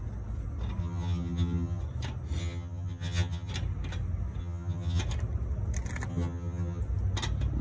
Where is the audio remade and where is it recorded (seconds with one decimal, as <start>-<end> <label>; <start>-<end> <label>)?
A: 0.0-0.8 recorded; 0.8-1.8 remade; 1.8-2.4 recorded; 2.4-3.5 remade; 3.5-4.4 recorded; 4.4-5.0 remade; 5.0-6.1 recorded; 6.1-6.8 remade; 6.8-7.6 recorded